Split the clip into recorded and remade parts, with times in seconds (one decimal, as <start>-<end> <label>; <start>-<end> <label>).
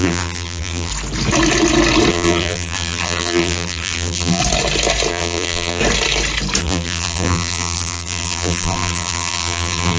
0.0-0.9 remade; 0.9-2.1 recorded; 2.1-4.4 remade; 4.4-5.1 recorded; 5.1-5.8 remade; 5.8-6.6 recorded; 6.6-10.0 remade